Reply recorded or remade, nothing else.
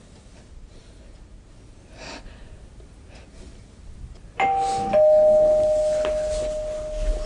recorded